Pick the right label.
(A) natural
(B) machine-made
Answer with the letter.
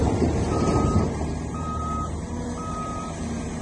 B